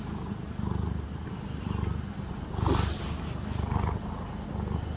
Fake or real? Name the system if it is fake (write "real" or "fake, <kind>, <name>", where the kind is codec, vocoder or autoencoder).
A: real